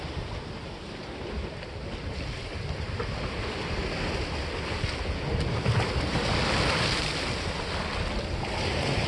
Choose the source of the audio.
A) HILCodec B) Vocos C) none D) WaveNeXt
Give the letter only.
C